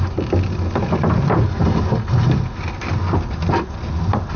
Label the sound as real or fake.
real